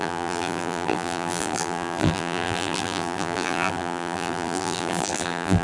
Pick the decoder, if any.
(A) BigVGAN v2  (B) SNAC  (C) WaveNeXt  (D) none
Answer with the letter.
A